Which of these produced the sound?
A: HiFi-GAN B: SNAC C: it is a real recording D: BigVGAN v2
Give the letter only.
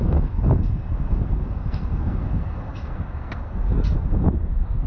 B